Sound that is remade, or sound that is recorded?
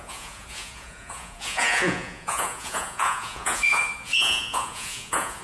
remade